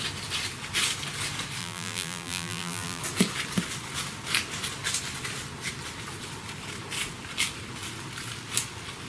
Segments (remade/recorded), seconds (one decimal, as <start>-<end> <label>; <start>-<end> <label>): 0.0-1.6 recorded; 1.6-3.0 remade; 3.0-9.1 recorded